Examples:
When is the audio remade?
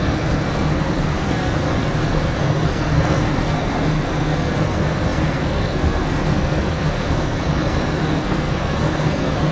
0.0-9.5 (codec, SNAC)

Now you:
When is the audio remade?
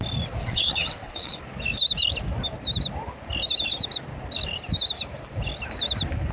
0.4-1.4 (vocoder, WaveNeXt)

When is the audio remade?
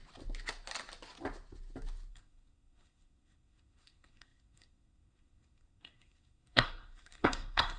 2.1-7.8 (codec, SNAC)